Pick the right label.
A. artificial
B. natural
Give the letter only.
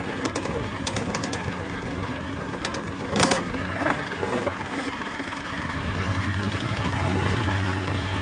A